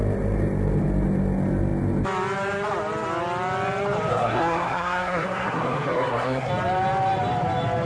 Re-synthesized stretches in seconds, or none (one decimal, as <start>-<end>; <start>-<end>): 4.1-6.5